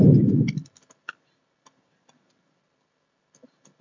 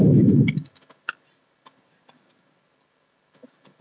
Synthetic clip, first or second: first